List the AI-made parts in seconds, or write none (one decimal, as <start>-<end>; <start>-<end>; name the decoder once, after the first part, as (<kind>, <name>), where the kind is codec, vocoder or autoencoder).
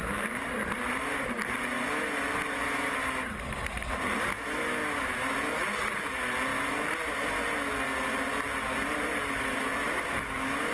none